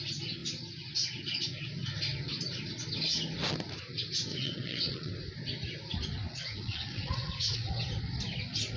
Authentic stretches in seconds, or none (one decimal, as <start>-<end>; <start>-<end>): 0.0-4.3; 5.1-6.3; 7.7-8.8